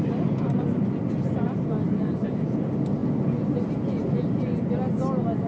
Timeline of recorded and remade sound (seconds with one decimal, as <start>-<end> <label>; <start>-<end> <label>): 0.0-5.5 recorded